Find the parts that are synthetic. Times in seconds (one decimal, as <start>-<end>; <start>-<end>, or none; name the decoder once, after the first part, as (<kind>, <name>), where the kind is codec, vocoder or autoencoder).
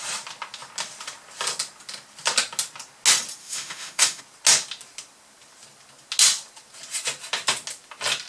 3.4-4.2 (autoencoder, DAC-VAE)